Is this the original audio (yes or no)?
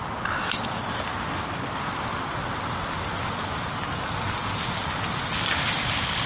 yes